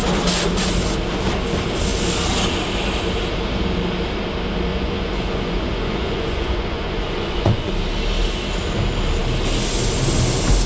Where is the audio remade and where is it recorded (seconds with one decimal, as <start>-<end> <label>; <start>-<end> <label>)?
0.0-4.7 recorded; 4.7-7.7 remade; 7.7-10.7 recorded